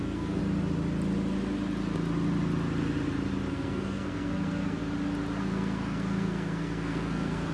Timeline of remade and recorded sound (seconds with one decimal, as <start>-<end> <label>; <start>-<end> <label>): 0.0-0.4 remade; 0.4-3.5 recorded; 3.5-4.8 remade; 4.8-5.4 recorded; 5.4-7.5 remade

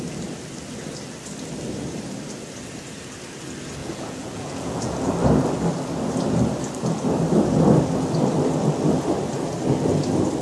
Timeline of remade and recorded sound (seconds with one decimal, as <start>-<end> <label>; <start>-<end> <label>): 0.0-3.8 recorded; 3.8-5.1 remade; 5.1-10.4 recorded